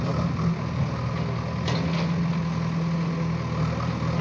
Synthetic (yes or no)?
no